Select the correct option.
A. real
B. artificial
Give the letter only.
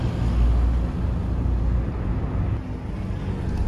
A